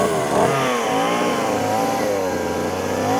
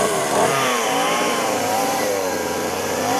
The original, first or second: first